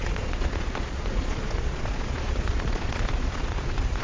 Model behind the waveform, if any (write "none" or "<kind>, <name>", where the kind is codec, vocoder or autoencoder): vocoder, Vocos